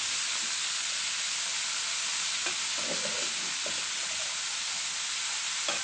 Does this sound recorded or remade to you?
recorded